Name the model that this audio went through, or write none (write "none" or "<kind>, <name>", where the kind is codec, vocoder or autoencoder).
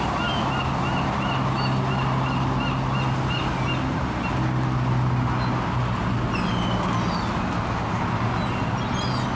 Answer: none